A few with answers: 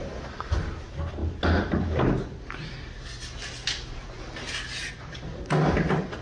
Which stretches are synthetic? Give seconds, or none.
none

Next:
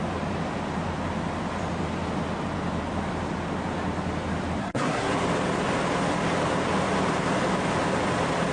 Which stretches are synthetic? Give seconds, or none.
4.6-5.1 (codec, SNAC)

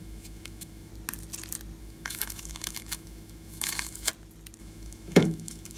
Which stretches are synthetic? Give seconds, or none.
0.0-0.9 (autoencoder, DAC-VAE); 1.8-4.1; 4.6-5.8

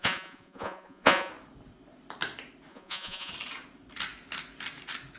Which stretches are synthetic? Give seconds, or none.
0.0-1.3 (vocoder, Vocos); 2.7-3.3

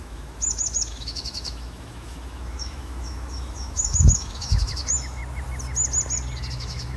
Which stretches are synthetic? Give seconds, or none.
0.0-5.2 (autoencoder, DAC-VAE); 6.5-7.0